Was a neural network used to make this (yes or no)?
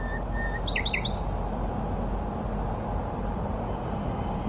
no